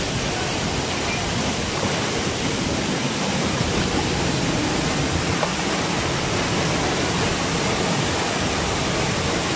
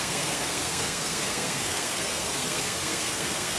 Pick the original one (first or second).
first